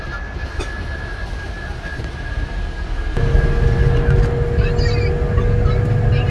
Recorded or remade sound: recorded